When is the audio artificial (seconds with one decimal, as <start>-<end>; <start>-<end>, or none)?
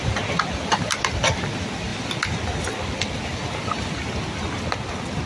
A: none